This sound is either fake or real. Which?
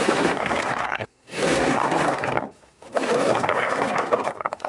fake